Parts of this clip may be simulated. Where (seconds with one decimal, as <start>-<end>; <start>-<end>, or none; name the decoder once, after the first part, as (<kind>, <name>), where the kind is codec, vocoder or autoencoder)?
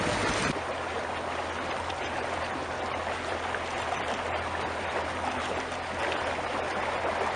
none